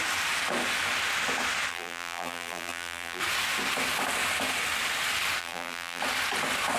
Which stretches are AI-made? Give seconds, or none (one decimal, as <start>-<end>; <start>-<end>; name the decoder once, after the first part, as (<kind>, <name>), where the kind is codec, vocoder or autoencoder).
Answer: 1.7-3.2 (vocoder, BigVGAN v2); 5.4-6.0